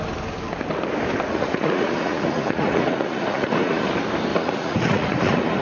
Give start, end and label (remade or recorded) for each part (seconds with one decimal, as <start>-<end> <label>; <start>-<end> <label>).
0.0-1.3 recorded; 1.3-3.9 remade; 3.9-4.3 recorded; 4.3-5.6 remade